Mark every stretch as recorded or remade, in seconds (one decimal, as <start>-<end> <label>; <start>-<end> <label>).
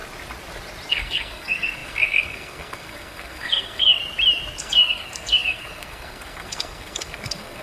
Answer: 0.0-0.9 recorded; 0.9-4.0 remade; 4.0-4.6 recorded; 4.6-7.6 remade